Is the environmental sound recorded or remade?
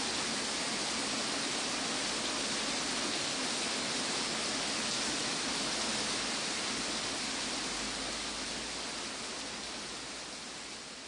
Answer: recorded